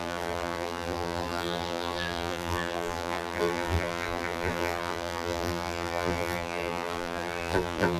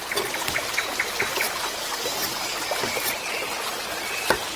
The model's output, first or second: first